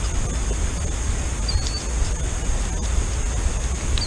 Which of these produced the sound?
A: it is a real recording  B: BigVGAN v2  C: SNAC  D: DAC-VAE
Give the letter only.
A